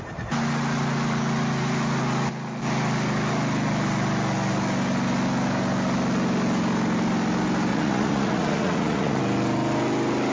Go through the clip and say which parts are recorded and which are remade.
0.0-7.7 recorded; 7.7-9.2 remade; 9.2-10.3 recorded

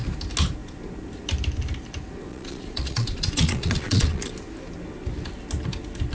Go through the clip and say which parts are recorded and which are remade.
0.0-2.3 recorded; 2.3-4.3 remade; 4.3-6.1 recorded

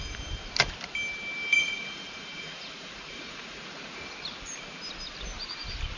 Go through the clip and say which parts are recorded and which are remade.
0.0-1.6 recorded; 1.6-4.0 remade; 4.0-6.0 recorded